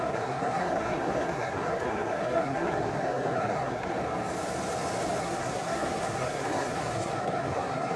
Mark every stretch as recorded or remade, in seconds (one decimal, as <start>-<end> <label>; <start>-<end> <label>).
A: 0.0-3.9 remade; 3.9-5.2 recorded; 5.2-8.0 remade